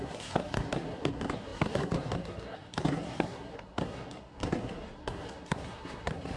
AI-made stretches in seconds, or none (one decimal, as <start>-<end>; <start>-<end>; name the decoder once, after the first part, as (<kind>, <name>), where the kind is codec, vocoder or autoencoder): 0.0-6.4 (codec, SNAC)